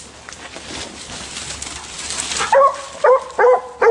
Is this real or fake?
real